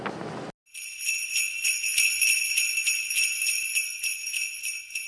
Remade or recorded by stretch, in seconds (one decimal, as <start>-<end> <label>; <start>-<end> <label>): 0.0-5.1 recorded

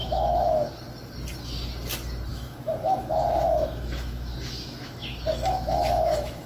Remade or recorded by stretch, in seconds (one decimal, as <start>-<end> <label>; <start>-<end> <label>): 0.0-0.7 remade; 0.7-2.3 recorded; 2.3-6.5 remade